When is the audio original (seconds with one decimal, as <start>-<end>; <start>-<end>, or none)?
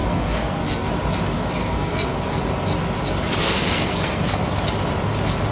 0.9-1.6; 2.4-3.4; 4.4-5.5